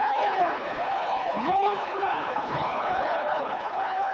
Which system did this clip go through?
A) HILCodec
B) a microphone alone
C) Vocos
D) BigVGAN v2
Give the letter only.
A